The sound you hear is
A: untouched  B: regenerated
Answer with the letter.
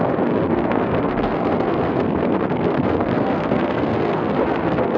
B